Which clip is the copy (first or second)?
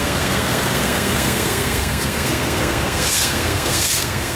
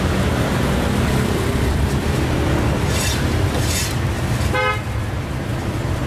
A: first